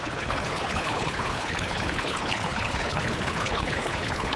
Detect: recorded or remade remade